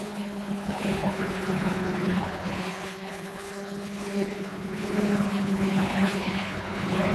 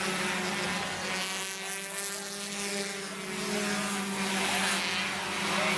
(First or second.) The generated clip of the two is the first